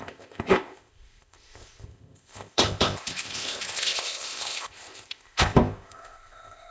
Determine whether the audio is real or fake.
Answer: fake